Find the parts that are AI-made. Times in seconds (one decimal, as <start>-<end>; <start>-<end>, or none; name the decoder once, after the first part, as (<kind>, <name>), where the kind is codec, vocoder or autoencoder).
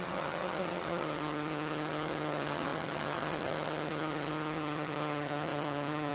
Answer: 0.0-6.1 (vocoder, HiFi-GAN)